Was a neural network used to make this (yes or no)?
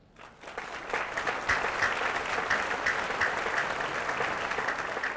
no